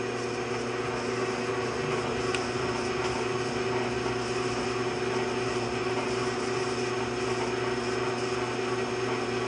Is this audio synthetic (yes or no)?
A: no